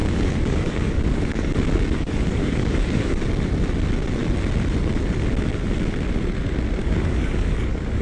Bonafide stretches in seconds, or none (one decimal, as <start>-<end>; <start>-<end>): 3.2-6.8